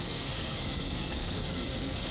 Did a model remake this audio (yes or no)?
yes